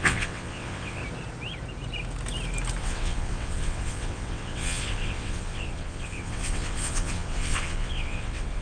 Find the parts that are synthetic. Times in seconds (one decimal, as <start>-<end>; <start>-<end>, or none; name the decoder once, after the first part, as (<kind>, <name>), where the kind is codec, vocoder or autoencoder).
0.0-1.0 (vocoder, WaveNeXt); 2.8-8.6